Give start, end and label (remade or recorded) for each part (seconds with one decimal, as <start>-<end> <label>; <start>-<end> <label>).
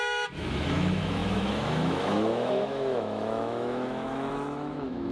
0.0-5.1 remade